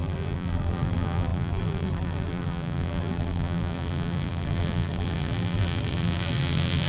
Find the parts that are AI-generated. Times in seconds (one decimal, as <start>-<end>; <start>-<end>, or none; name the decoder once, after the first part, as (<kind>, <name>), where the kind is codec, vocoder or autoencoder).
0.0-6.9 (vocoder, BigVGAN v2)